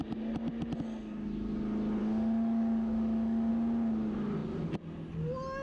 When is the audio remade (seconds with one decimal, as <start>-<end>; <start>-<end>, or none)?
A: 2.0-3.5